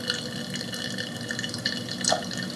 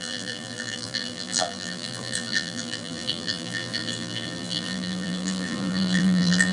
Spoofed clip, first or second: second